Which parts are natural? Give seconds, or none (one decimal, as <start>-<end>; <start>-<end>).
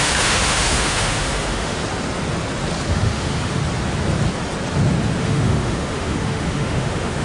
1.8-2.9; 3.6-5.2